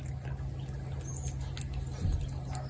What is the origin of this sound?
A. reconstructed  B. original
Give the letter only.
B